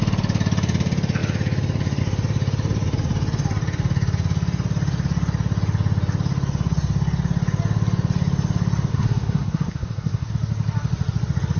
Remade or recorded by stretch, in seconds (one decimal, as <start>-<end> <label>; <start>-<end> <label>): 0.0-8.9 recorded; 8.9-10.3 remade; 10.3-11.6 recorded